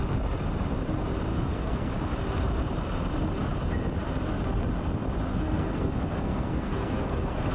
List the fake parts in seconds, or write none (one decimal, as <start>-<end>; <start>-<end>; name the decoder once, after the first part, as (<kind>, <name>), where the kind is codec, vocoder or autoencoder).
1.3-1.9 (codec, SNAC); 5.3-7.5